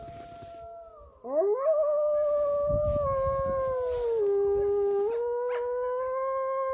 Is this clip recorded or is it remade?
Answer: recorded